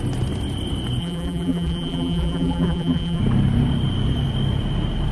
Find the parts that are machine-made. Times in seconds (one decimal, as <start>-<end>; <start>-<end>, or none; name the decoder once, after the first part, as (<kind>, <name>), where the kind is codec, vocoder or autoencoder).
1.0-3.2 (vocoder, BigVGAN v2)

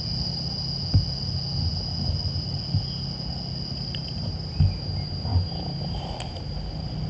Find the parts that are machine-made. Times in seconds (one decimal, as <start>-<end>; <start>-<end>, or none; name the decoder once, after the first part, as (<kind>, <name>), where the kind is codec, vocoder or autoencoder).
none